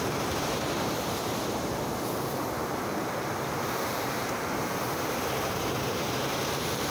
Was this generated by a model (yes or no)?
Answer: yes